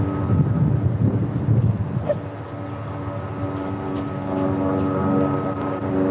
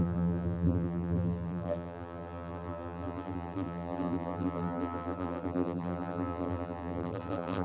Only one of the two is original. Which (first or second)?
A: first